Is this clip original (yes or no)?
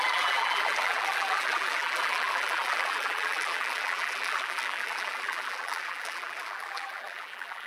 no